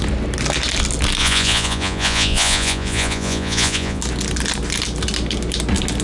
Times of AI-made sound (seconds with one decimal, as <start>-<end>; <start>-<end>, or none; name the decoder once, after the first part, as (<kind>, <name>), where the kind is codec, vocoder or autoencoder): 1.2-4.0 (vocoder, Vocos)